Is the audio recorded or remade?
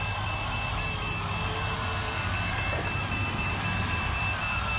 recorded